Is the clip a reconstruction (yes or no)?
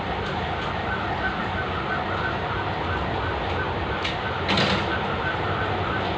no